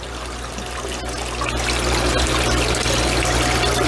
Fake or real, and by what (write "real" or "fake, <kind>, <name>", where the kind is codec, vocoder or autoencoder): real